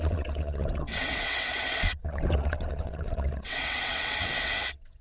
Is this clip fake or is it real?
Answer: fake